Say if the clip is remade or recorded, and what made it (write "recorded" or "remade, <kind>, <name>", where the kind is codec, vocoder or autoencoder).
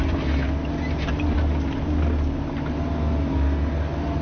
recorded